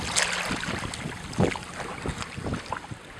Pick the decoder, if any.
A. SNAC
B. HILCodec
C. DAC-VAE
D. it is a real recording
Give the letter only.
D